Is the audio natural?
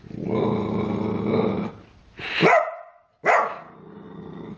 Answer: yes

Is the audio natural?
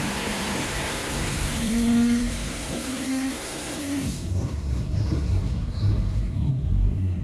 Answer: no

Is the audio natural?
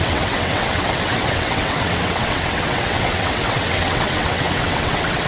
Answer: no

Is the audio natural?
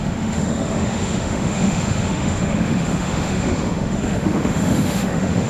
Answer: no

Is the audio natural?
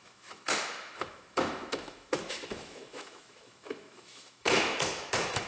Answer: no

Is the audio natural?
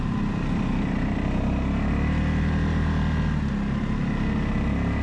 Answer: yes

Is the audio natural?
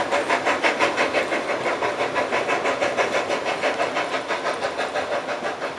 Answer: yes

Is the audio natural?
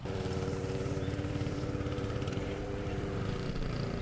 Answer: no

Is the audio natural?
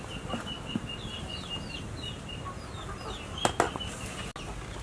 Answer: yes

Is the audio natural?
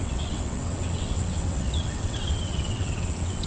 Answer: no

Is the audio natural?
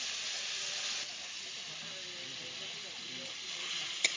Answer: yes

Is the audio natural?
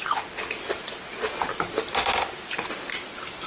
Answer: yes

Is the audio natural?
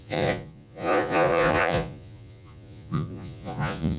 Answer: no